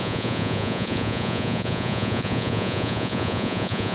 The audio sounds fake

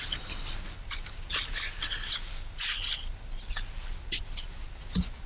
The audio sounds real